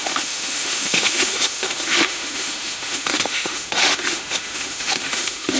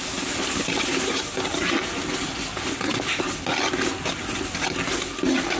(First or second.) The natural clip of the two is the second